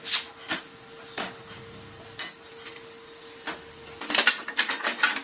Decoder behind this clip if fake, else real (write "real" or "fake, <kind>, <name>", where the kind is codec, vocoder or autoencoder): real